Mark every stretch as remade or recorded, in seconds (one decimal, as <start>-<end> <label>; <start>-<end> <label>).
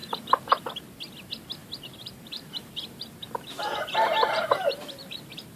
0.0-0.7 remade; 0.7-1.6 recorded; 1.6-2.7 remade; 2.7-3.2 recorded; 3.2-5.6 remade